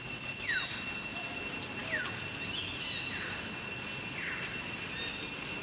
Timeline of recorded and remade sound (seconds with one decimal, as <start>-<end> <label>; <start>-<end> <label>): 0.0-5.6 recorded